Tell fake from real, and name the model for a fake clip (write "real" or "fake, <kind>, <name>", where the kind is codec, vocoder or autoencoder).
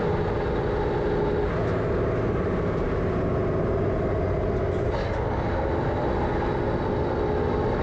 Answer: real